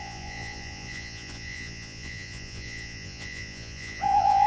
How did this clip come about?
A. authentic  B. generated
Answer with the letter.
B